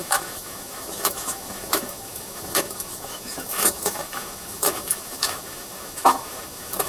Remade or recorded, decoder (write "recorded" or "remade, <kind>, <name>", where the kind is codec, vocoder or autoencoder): remade, autoencoder, DAC-VAE